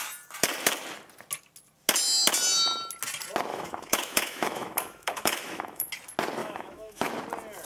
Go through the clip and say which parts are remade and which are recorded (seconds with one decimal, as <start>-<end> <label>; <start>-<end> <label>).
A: 0.0-3.5 recorded; 3.5-5.9 remade; 5.9-6.4 recorded; 6.4-7.1 remade; 7.1-7.6 recorded